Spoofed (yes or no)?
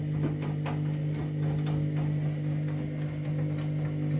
no